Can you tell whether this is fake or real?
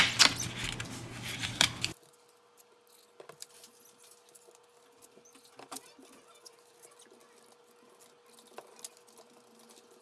real